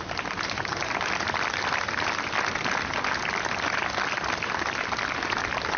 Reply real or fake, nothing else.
real